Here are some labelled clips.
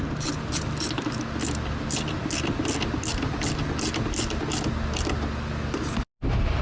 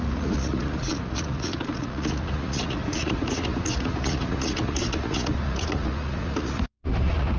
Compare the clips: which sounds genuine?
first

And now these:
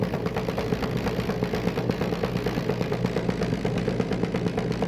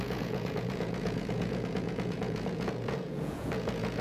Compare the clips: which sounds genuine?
first